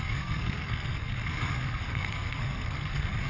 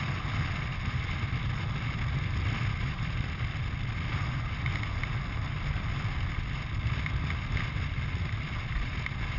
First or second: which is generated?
first